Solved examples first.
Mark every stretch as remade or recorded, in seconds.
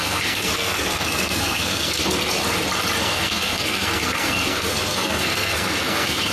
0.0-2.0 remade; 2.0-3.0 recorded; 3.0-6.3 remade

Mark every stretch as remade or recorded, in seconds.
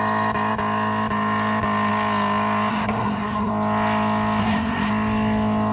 0.0-2.7 recorded; 2.7-3.5 remade; 3.5-4.4 recorded; 4.4-4.9 remade; 4.9-5.7 recorded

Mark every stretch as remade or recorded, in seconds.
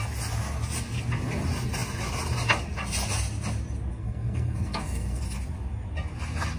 0.0-3.9 recorded; 3.9-5.2 remade; 5.2-6.6 recorded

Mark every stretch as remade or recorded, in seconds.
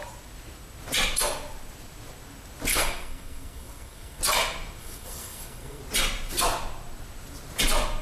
0.0-2.7 recorded; 2.7-4.2 remade; 4.2-4.8 recorded; 4.8-5.8 remade; 5.8-8.0 recorded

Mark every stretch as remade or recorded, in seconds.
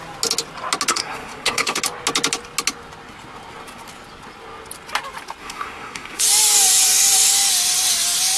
0.0-0.9 recorded; 0.9-1.8 remade; 1.8-5.4 recorded; 5.4-6.2 remade; 6.2-8.4 recorded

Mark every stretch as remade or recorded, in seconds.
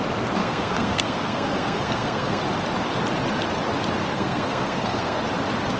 0.0-0.4 recorded; 0.4-2.4 remade; 2.4-4.1 recorded; 4.1-5.2 remade; 5.2-5.8 recorded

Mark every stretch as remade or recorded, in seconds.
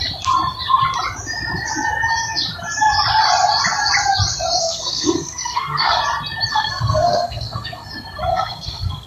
0.0-4.6 recorded; 4.6-6.0 remade; 6.0-6.5 recorded; 6.5-7.9 remade; 7.9-8.3 recorded; 8.3-9.1 remade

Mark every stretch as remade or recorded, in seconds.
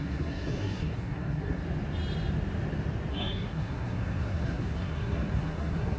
0.0-1.6 remade; 1.6-3.1 recorded; 3.1-6.0 remade